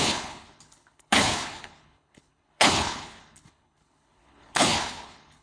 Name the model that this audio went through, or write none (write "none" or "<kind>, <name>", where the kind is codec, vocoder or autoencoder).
codec, HILCodec